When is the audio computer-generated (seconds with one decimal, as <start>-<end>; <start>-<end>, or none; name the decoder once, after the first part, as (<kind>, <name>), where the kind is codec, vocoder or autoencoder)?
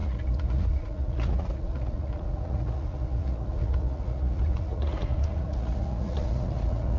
0.0-7.0 (vocoder, Vocos)